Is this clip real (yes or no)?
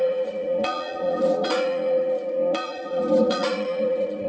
no